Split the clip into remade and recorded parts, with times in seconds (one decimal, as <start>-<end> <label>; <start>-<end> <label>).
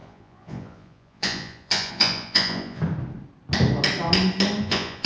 0.0-2.8 remade; 2.8-4.6 recorded; 4.6-5.1 remade